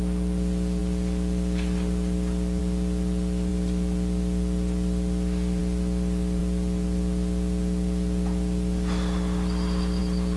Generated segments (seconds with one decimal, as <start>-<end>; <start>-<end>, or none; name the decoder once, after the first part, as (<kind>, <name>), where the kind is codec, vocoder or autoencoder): none